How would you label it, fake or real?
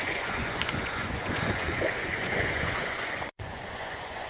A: fake